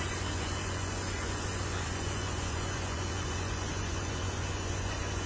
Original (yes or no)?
no